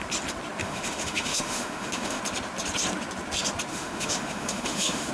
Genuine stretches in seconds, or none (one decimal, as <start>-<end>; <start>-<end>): 0.0-0.6; 2.2-3.7